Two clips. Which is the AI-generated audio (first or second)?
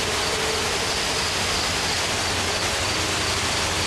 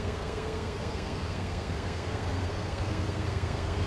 second